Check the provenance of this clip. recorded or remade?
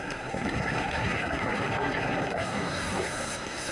remade